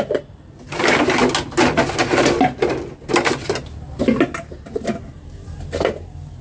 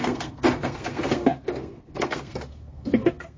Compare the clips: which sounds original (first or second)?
first